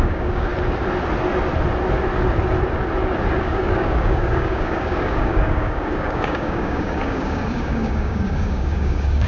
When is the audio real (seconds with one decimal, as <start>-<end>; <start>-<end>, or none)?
0.5-3.4